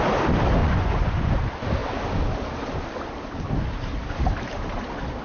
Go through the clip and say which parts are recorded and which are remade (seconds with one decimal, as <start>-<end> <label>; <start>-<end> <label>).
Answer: 0.0-0.6 recorded; 0.6-1.3 remade; 1.3-5.2 recorded